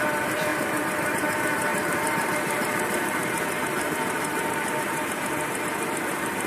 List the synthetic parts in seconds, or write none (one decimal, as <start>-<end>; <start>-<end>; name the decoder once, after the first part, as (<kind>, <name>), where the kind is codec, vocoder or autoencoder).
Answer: 0.0-6.5 (vocoder, BigVGAN v2)